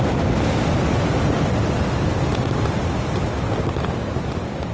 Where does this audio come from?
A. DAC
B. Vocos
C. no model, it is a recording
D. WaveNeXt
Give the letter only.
C